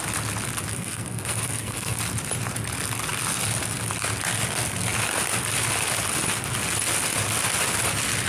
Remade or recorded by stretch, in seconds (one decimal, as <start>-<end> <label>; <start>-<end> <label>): 0.0-0.7 recorded; 0.7-2.0 remade; 2.0-8.3 recorded